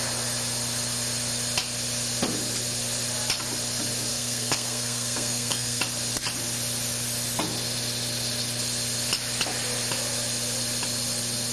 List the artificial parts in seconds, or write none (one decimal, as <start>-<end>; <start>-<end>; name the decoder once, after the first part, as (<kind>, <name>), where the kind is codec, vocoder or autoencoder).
4.1-5.8 (codec, SNAC)